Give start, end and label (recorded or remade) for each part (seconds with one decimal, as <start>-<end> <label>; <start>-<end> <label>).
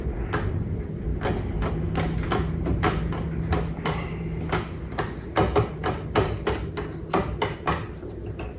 0.0-8.6 recorded